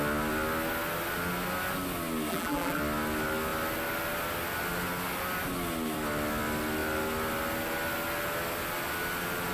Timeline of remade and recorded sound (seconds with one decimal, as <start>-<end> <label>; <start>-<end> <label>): 0.0-2.3 recorded; 2.3-2.8 remade; 2.8-9.5 recorded